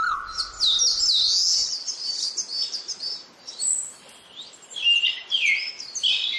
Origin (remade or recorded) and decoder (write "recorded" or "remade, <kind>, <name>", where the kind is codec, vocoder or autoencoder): recorded